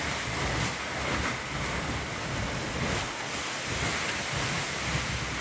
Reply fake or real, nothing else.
real